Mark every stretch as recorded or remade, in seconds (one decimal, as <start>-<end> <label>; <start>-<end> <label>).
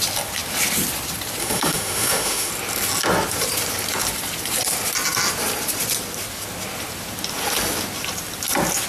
0.0-1.4 recorded; 1.4-2.5 remade; 2.5-8.9 recorded